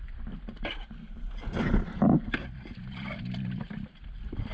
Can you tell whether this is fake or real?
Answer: fake